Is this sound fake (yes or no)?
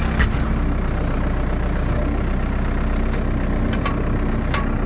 no